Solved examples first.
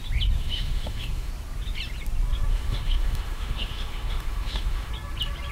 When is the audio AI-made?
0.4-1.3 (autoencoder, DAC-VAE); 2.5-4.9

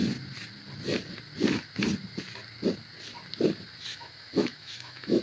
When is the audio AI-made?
3.9-5.2 (autoencoder, DAC-VAE)

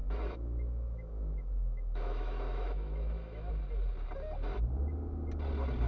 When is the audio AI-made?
0.0-3.5 (autoencoder, DAC-VAE)

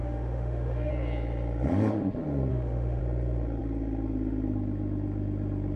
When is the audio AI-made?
0.0-0.9 (autoencoder, DAC-VAE); 2.5-3.0

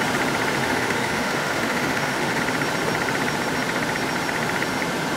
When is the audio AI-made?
0.6-2.4 (autoencoder, DAC-VAE)

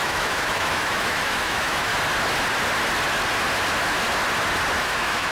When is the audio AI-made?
0.0-1.9 (autoencoder, DAC-VAE); 4.8-5.3

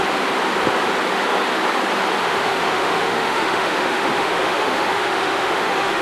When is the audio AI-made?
2.2-6.0 (autoencoder, DAC-VAE)